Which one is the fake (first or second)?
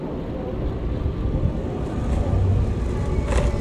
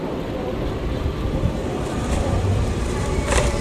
second